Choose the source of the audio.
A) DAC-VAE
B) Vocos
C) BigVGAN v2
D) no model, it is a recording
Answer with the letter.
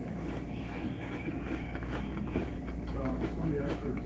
A